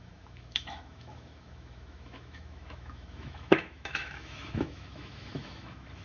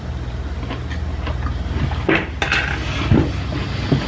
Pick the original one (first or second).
second